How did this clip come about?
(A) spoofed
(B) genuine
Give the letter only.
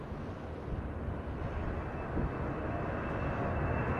B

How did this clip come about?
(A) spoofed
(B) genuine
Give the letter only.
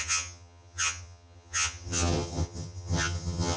A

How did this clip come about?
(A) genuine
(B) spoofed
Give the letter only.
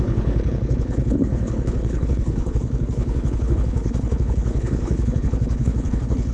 B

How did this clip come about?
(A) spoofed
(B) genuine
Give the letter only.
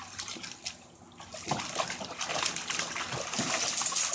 B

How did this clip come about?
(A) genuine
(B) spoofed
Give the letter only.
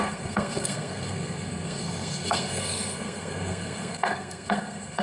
B